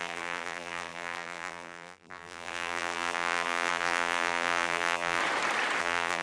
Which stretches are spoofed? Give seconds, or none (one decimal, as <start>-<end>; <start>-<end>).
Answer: 0.0-5.2; 5.8-6.2